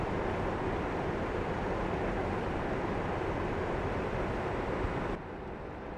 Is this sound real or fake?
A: real